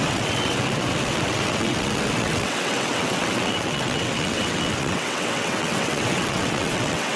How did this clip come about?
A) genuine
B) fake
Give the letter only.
B